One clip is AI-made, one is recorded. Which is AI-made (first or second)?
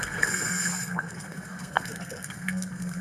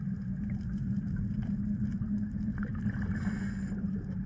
first